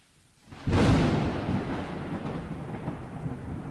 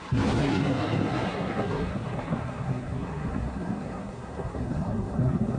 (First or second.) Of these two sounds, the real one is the first